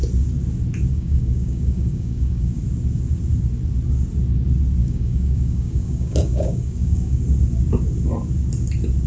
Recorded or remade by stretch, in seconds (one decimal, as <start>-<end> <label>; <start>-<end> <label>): 0.0-0.9 recorded; 0.9-2.6 remade; 2.6-4.8 recorded; 4.8-7.2 remade; 7.2-9.1 recorded